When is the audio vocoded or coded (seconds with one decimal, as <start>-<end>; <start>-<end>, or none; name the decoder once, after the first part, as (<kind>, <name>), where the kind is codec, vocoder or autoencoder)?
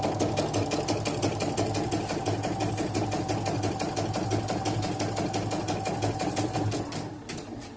none